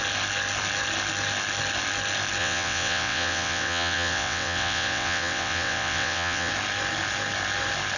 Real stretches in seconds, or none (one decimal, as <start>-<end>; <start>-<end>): 0.0-2.4; 6.5-8.0

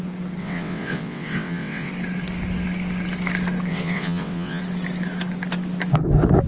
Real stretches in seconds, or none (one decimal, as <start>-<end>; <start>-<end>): 0.0-0.4; 1.9-3.7; 4.6-6.5

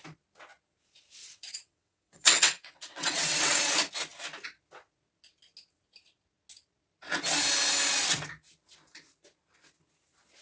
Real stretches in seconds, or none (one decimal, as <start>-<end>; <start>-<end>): 0.0-1.2; 3.6-10.4

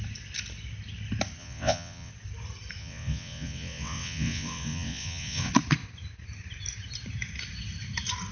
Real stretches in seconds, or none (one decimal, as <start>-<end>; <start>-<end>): 0.0-1.4; 2.1-2.8; 5.5-8.3